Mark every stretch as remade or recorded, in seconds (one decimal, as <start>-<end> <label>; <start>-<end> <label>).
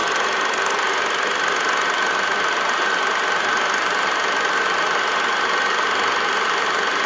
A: 0.0-7.1 recorded